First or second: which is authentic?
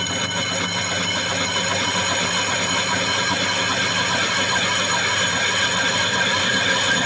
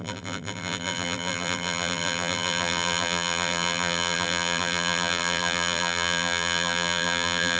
first